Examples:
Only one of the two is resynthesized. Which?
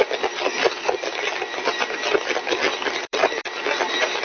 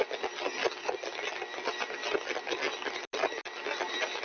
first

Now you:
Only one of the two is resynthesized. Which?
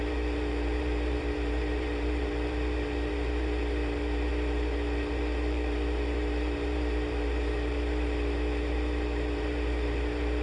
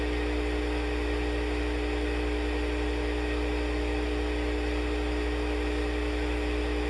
first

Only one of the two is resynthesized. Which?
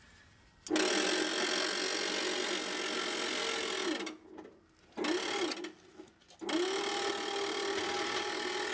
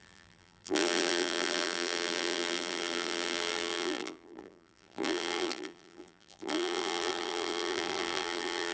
second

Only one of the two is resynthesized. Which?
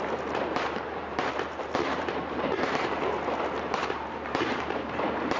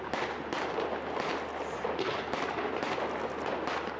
first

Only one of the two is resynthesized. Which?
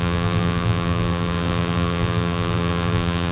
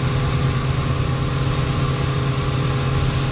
first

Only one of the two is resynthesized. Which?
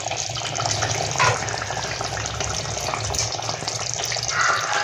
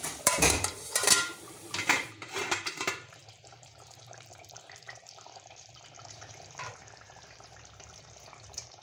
second